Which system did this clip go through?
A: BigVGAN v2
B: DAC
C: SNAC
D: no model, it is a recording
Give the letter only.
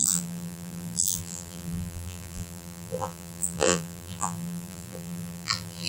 A